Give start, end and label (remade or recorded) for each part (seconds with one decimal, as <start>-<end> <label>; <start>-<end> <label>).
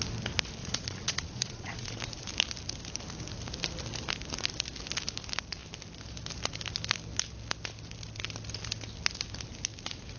0.0-0.6 recorded; 0.6-1.9 remade; 1.9-10.2 recorded